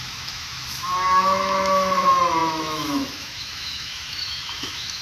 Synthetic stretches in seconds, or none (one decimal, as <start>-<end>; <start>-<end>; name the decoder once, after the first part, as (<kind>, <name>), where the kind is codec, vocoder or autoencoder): 0.0-5.0 (autoencoder, DAC-VAE)